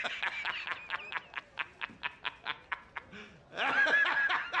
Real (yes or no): yes